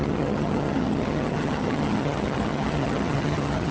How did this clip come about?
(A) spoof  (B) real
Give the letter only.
A